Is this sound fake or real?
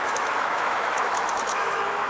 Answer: fake